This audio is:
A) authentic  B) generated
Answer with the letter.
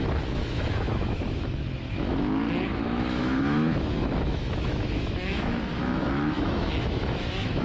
B